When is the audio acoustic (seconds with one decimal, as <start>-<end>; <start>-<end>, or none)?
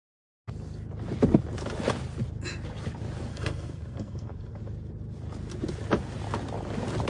0.0-3.3; 4.6-7.1